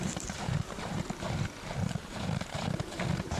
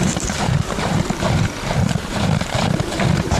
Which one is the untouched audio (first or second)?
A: first